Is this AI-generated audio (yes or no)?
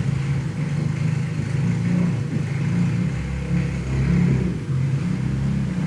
no